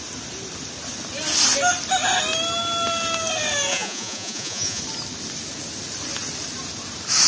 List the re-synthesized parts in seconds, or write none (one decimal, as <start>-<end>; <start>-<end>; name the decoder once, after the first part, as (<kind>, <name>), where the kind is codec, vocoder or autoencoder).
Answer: 3.7-4.8 (vocoder, Vocos)